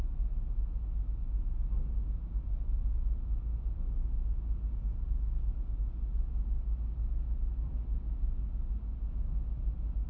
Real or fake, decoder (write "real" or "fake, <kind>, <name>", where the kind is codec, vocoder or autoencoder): real